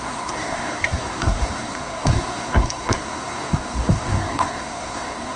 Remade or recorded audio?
remade